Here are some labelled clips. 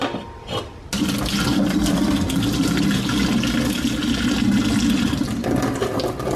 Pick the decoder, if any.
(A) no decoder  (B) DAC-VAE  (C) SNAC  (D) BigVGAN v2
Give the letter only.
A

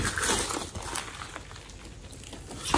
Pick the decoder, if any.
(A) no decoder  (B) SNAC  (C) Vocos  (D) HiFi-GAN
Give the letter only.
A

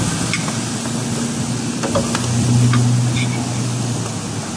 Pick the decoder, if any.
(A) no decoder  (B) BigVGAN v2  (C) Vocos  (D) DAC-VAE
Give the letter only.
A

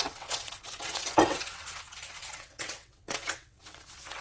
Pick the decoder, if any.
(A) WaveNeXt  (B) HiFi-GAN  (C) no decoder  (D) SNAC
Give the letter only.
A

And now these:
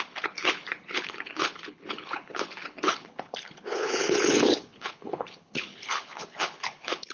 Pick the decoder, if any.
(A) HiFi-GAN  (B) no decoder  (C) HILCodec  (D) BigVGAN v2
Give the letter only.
C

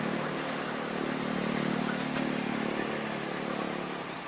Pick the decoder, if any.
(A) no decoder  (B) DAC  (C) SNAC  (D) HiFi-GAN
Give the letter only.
A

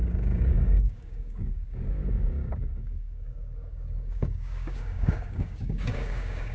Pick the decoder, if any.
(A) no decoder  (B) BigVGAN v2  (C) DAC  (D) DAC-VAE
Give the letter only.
C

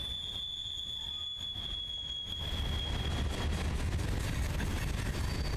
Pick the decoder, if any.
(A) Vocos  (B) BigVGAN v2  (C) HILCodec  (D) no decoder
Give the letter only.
D